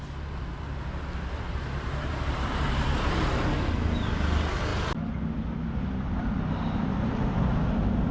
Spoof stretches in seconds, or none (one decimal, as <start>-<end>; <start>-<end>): 1.5-3.7